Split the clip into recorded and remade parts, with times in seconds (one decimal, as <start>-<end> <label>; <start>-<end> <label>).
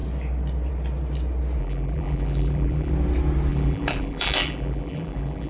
0.0-1.6 recorded; 1.6-2.9 remade; 2.9-3.5 recorded; 3.5-5.5 remade